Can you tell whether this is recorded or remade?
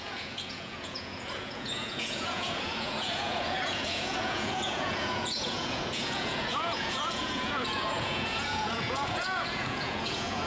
remade